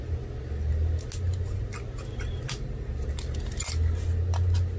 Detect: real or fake real